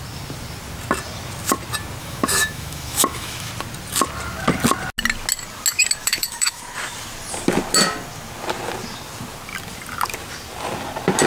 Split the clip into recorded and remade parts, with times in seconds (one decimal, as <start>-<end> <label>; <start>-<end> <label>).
0.0-2.0 recorded; 2.0-3.5 remade; 3.5-6.0 recorded; 6.0-6.6 remade; 6.6-11.3 recorded